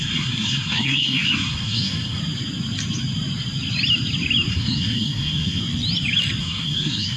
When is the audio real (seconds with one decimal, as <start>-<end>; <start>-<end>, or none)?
2.2-4.5; 5.6-6.4